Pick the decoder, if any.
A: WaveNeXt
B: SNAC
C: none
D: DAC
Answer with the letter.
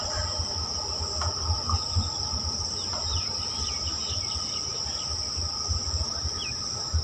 C